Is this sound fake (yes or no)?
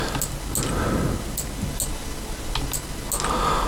no